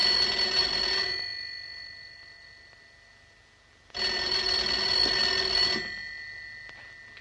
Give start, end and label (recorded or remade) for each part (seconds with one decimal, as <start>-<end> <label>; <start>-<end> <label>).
0.0-7.2 recorded

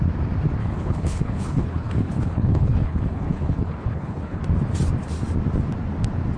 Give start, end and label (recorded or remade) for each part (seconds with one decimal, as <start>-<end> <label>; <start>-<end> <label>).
0.0-0.6 recorded; 0.6-4.4 remade; 4.4-6.4 recorded

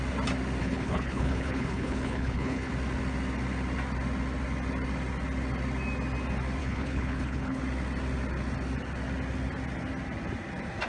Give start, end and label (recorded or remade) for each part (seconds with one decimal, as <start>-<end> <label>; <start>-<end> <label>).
0.0-0.6 recorded; 0.6-2.7 remade; 2.7-6.6 recorded; 6.6-7.6 remade; 7.6-10.9 recorded